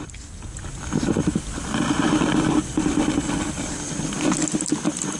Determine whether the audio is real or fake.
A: real